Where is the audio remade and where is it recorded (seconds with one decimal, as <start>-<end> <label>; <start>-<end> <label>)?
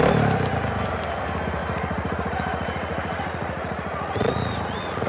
0.0-1.6 recorded; 1.6-5.1 remade